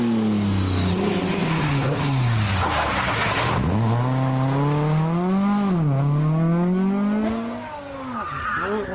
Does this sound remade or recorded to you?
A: recorded